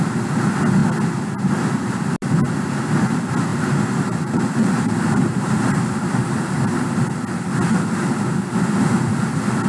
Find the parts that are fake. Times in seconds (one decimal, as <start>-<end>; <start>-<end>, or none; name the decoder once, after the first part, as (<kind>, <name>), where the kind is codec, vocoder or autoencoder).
3.5-6.6 (vocoder, BigVGAN v2)